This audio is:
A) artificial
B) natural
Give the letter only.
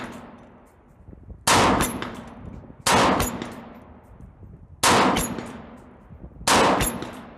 B